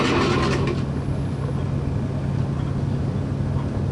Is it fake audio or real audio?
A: real